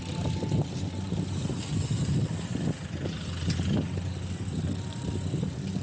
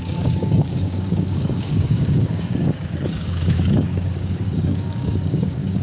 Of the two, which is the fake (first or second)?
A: second